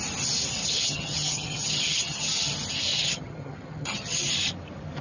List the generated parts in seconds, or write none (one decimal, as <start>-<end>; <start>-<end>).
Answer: 0.6-2.5; 2.9-4.2